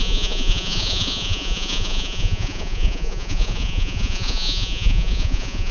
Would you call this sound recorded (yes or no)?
no